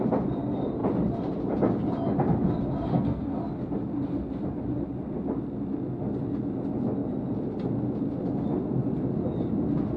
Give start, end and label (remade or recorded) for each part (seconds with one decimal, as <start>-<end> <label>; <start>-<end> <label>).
0.0-2.9 recorded; 2.9-3.4 remade; 3.4-10.0 recorded